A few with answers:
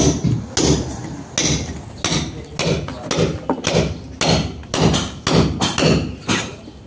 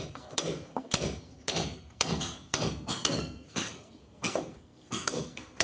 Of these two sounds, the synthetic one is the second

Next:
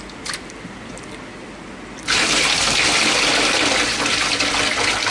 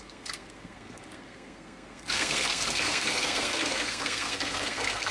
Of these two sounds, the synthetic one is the second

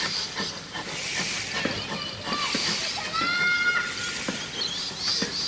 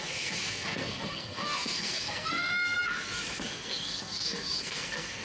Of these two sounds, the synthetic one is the second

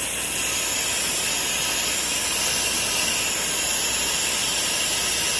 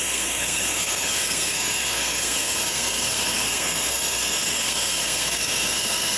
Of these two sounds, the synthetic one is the second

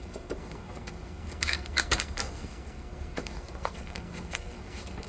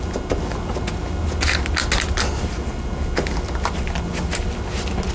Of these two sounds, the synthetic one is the first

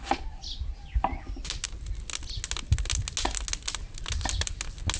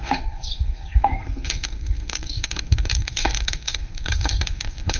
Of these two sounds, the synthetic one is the second